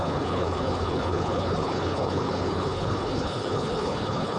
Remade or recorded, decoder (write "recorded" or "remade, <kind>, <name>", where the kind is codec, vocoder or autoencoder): remade, codec, HILCodec